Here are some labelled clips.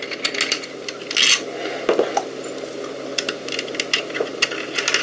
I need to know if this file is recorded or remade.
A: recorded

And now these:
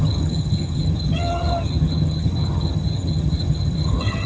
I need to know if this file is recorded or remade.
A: remade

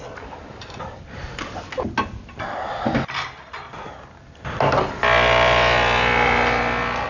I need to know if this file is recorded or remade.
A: recorded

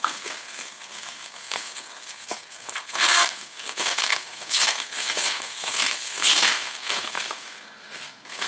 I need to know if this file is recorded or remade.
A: remade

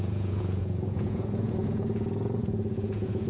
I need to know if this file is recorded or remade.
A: remade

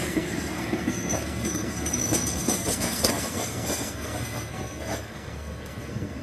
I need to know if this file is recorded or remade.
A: remade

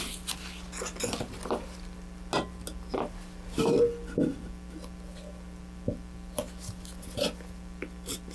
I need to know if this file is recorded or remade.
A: recorded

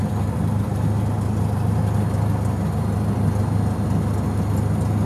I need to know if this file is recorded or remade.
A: recorded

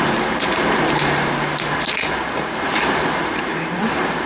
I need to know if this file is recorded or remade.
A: remade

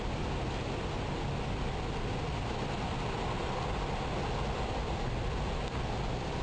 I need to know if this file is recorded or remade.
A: recorded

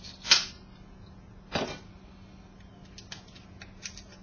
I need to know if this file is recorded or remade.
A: recorded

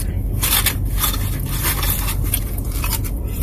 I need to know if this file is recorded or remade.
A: recorded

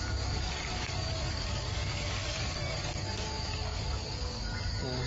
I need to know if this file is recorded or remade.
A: remade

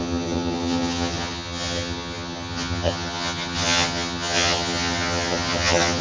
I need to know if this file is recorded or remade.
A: remade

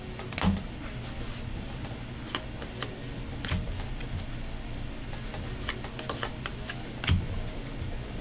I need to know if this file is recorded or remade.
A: recorded